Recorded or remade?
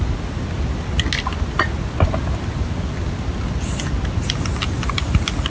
recorded